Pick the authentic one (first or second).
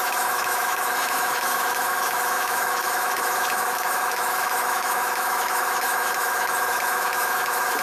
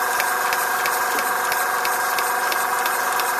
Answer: second